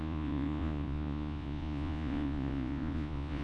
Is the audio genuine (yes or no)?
no